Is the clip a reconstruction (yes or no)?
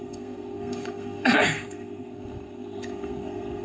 yes